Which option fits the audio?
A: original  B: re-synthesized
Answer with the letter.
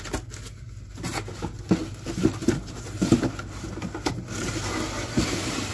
A